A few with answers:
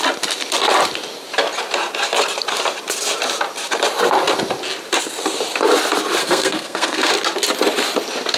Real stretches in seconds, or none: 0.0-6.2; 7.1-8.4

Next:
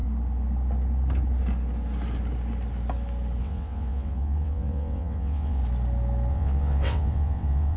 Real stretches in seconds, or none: 0.0-3.4; 5.6-6.3

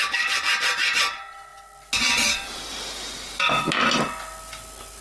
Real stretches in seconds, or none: 0.0-5.0